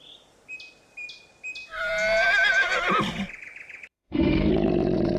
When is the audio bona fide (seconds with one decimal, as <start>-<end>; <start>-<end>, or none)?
0.0-3.9; 4.5-5.2